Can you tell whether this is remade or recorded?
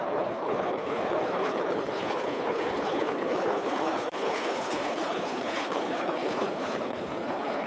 remade